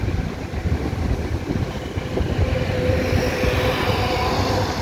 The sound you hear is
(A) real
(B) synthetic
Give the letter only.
A